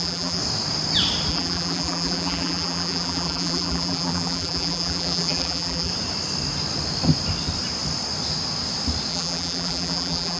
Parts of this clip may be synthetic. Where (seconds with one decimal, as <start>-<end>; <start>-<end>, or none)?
0.0-0.4; 1.3-5.9; 9.1-10.4